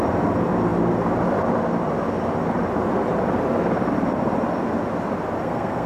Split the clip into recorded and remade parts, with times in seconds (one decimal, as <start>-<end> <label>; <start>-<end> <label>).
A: 0.0-5.4 recorded; 5.4-5.9 remade